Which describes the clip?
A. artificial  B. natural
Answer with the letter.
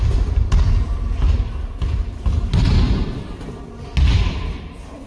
B